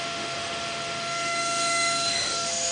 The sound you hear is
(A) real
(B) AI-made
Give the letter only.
B